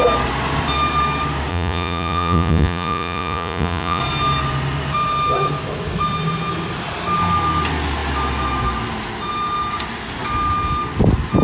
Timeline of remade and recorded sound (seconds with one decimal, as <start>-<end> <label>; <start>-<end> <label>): 0.0-1.5 recorded; 1.5-4.0 remade; 4.0-11.4 recorded